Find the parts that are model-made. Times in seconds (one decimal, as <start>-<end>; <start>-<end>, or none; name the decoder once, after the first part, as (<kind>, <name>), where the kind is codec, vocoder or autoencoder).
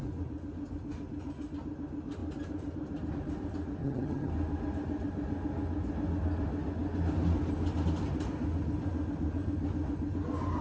3.8-4.3 (vocoder, HiFi-GAN)